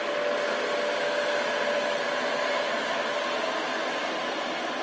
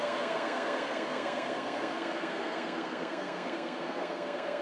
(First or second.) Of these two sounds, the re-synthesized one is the second